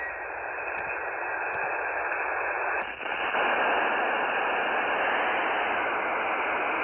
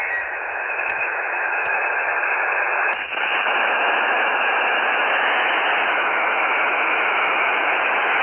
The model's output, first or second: second